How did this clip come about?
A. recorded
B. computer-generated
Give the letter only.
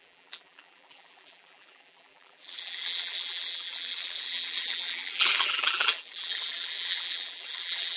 B